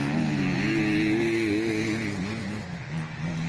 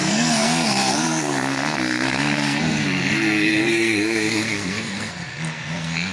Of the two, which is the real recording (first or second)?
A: first